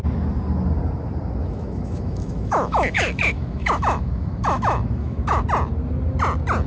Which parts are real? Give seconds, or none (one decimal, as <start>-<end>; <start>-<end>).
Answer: 0.0-1.4; 5.4-6.7